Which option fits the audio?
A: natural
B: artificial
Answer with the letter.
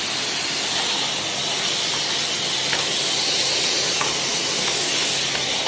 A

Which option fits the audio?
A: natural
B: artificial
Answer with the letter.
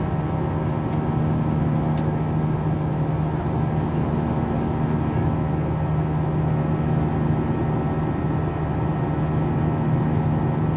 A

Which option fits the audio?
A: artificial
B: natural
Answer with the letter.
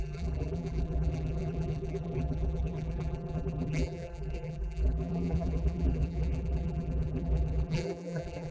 A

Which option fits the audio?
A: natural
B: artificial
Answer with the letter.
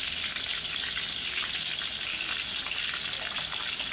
A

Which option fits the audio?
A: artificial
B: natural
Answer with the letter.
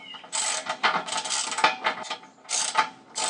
B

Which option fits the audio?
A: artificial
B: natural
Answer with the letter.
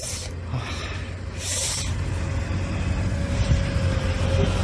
B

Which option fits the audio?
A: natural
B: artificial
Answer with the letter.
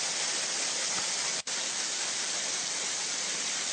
A